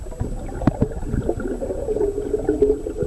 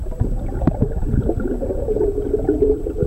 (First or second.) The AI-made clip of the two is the second